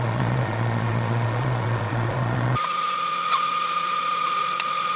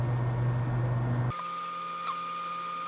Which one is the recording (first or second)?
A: second